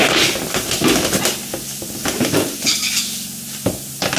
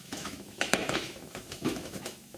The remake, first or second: second